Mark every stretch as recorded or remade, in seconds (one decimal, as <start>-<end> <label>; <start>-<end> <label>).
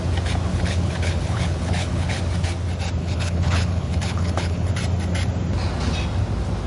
0.0-0.5 recorded; 0.5-2.2 remade; 2.2-3.0 recorded; 3.0-4.7 remade; 4.7-6.7 recorded